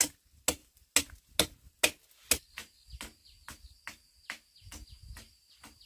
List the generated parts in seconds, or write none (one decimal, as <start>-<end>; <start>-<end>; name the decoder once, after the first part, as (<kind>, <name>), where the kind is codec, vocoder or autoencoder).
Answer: none